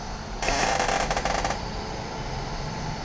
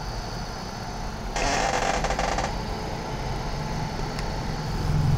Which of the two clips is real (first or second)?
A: second